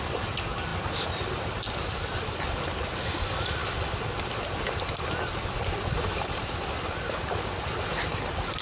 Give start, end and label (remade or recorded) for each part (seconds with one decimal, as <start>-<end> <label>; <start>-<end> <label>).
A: 0.0-8.6 recorded